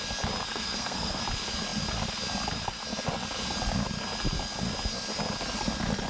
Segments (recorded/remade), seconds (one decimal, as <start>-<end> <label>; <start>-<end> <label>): 0.0-0.5 recorded; 0.5-1.2 remade; 1.2-6.1 recorded